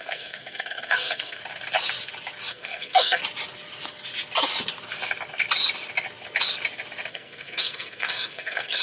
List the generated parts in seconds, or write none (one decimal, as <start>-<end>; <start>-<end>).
0.0-1.4; 2.5-3.2; 7.1-8.8